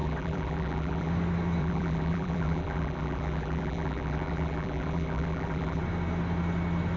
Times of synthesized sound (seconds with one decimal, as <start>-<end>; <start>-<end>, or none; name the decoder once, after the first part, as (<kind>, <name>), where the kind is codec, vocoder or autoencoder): 0.0-1.1 (vocoder, BigVGAN v2); 1.6-5.8